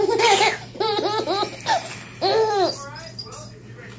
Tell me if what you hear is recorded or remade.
recorded